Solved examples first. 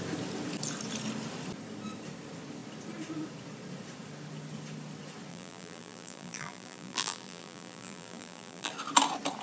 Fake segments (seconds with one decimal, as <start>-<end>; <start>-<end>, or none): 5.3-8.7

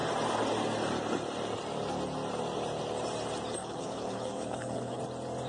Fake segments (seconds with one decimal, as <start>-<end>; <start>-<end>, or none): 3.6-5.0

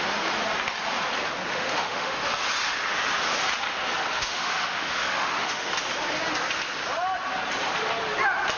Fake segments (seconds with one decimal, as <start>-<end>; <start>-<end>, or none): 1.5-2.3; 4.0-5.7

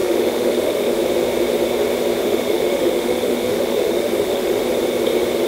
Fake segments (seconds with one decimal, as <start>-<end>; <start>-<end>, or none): 0.0-1.0; 2.2-4.6